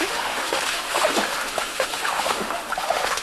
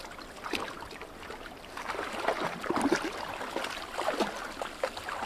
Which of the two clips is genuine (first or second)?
second